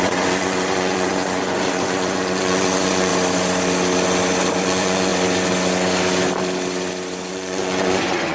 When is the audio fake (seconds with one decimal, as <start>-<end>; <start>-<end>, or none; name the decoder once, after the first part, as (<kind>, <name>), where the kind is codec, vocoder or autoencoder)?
0.0-3.1 (vocoder, Vocos); 4.6-5.1; 7.3-8.3